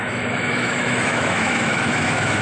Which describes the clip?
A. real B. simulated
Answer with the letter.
B